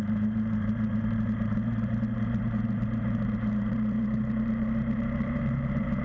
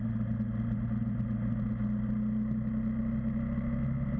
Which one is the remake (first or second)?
first